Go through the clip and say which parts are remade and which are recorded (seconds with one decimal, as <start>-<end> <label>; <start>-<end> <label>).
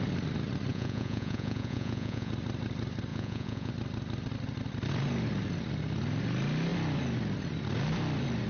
0.0-0.7 recorded; 0.7-2.3 remade; 2.3-3.1 recorded; 3.1-3.7 remade; 3.7-8.5 recorded